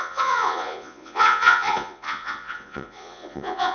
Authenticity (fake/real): fake